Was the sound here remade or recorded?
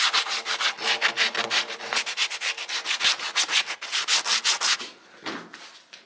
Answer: recorded